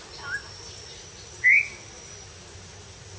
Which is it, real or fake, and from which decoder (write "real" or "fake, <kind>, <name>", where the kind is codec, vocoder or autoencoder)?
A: real